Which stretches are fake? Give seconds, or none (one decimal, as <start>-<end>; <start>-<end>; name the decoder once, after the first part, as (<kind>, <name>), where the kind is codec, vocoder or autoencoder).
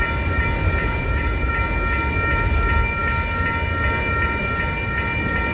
0.8-1.5 (vocoder, Vocos)